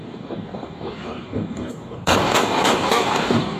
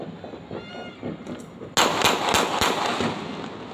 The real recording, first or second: second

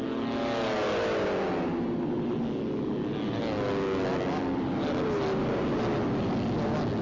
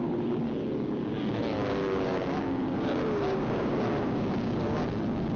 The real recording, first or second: first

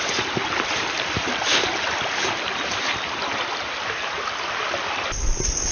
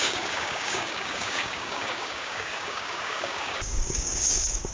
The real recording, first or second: first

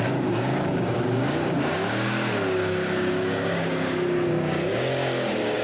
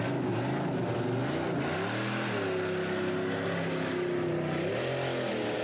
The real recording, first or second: second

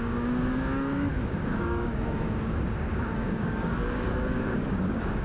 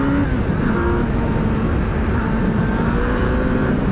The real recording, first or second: second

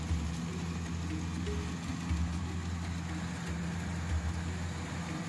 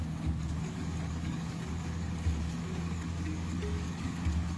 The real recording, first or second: first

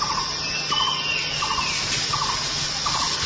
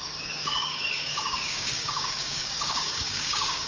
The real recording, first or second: first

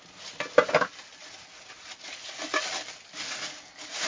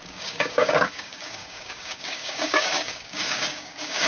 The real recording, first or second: first